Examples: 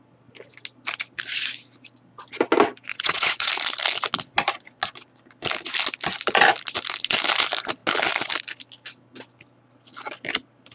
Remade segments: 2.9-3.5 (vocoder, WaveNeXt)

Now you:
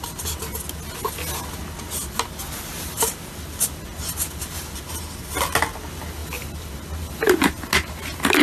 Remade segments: none

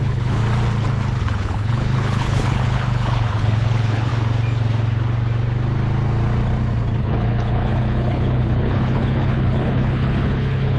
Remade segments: 0.0-0.4 (codec, HILCodec); 1.2-4.1; 7.0-10.8

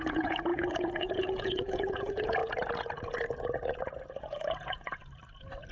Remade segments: 0.0-2.4 (vocoder, Vocos); 4.2-5.0

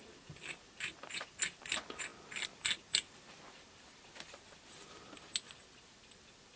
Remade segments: none

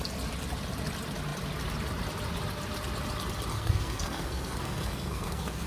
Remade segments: 3.5-5.7 (codec, SNAC)